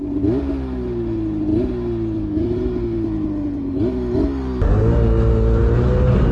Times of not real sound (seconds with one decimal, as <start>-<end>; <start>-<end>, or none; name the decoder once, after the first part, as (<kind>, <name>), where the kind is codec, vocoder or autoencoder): none